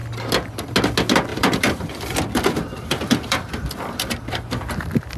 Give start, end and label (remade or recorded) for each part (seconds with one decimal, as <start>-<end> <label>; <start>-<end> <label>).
0.0-1.3 recorded; 1.3-4.4 remade; 4.4-5.2 recorded